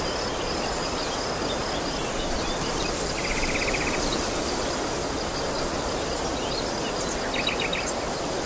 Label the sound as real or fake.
real